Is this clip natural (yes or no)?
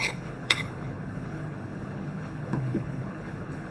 no